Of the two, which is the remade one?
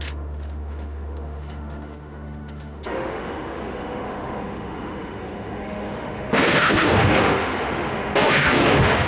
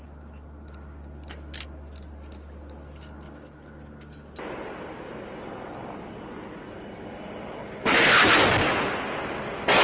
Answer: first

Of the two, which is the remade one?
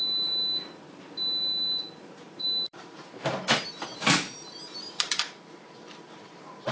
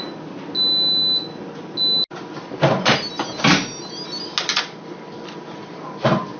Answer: first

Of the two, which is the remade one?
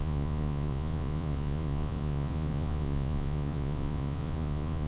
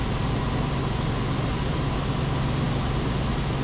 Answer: first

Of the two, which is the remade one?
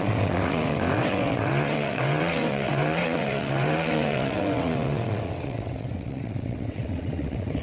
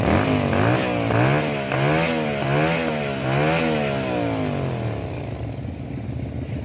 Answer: first